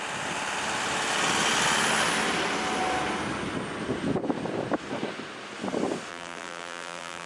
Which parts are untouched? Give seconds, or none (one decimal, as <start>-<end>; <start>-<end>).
0.0-6.1